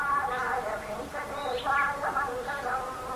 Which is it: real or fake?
real